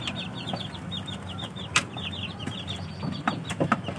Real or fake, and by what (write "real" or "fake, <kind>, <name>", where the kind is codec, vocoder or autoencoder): real